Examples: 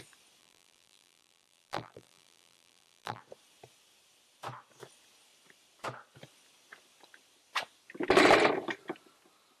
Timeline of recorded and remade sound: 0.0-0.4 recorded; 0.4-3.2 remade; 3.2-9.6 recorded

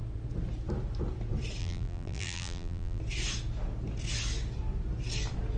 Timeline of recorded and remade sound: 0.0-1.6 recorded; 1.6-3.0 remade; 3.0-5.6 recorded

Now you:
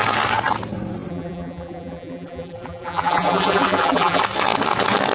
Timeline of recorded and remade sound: 0.0-1.1 recorded; 1.1-4.2 remade; 4.2-5.1 recorded

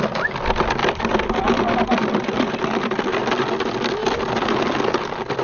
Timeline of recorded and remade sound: 0.0-0.8 recorded; 0.8-2.6 remade; 2.6-5.4 recorded